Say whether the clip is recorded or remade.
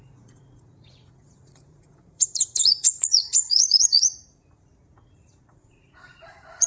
remade